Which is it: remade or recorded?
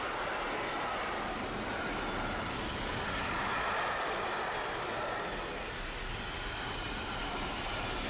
recorded